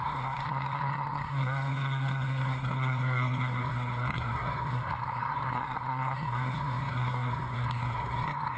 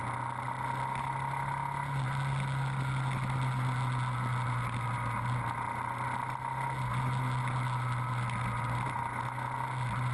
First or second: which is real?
second